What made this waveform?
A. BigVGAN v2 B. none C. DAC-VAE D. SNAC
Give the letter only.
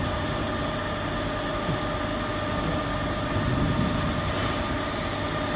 B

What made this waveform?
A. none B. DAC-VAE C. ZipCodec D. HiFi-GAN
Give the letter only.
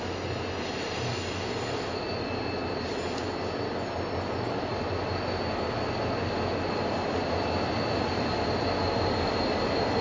A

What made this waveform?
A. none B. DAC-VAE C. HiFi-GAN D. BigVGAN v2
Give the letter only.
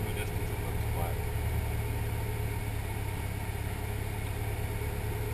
A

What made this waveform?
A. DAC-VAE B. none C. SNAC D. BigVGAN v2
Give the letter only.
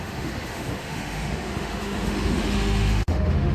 A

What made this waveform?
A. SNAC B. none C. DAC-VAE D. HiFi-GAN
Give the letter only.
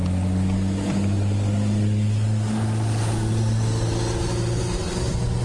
B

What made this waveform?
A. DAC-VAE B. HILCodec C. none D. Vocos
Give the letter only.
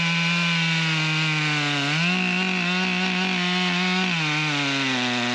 C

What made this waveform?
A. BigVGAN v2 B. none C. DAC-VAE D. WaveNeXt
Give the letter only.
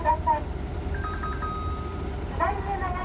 B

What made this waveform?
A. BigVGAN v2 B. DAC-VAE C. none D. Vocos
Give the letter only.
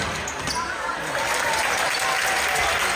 C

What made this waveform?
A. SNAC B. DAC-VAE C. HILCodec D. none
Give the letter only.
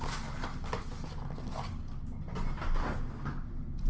D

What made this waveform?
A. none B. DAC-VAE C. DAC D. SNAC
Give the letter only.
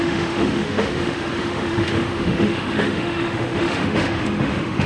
B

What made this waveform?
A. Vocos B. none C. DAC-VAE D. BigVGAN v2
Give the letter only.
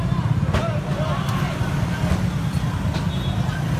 B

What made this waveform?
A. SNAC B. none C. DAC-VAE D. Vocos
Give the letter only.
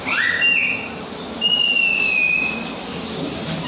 B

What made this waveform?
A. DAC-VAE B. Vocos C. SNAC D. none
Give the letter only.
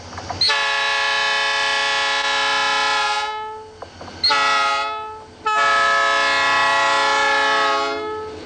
D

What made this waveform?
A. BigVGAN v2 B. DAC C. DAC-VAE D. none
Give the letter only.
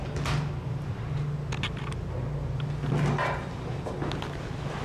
D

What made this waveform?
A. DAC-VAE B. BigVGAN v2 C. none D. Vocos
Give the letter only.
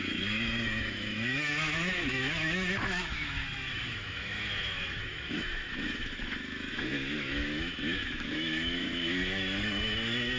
A